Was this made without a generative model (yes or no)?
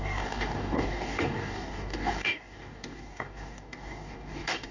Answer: no